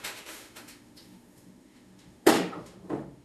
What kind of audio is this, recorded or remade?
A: remade